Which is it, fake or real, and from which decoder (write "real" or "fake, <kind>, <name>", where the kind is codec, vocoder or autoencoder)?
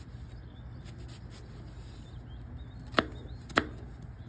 real